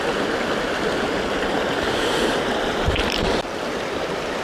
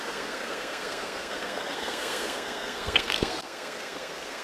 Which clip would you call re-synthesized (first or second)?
second